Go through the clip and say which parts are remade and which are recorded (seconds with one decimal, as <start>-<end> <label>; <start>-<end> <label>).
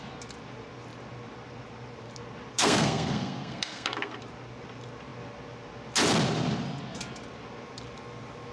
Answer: 0.0-2.5 recorded; 2.5-4.2 remade; 4.2-8.5 recorded